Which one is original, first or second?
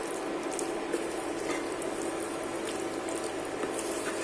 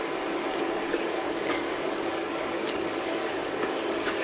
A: first